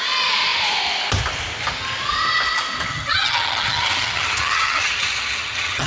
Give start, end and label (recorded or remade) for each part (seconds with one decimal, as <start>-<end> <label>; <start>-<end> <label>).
0.0-2.9 recorded; 2.9-5.9 remade